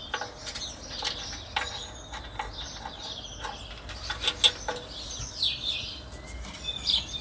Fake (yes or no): no